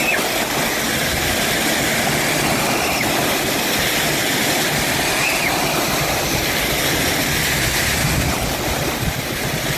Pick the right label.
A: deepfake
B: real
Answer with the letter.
B